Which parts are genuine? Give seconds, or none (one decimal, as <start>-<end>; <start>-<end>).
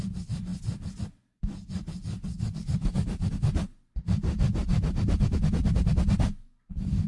0.0-2.3; 3.3-7.1